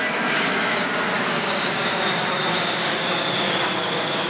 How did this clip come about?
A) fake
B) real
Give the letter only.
A